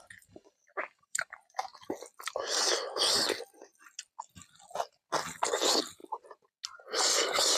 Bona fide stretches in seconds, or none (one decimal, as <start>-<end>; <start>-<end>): 1.6-5.5; 6.0-7.6